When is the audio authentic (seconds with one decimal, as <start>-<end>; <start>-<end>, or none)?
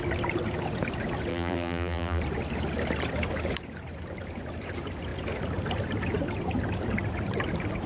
0.0-1.3; 2.2-7.9